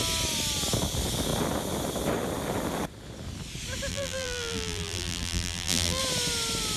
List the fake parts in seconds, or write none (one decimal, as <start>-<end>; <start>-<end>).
3.9-6.0